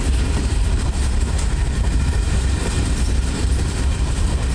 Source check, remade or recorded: remade